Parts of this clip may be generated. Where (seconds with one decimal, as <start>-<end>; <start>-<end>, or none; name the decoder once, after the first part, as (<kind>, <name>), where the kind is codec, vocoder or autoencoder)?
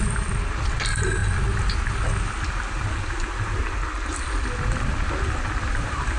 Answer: none